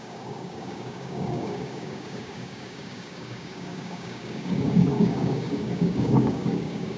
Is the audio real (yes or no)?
no